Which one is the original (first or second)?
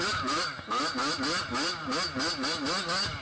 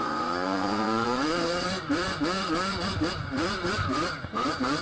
first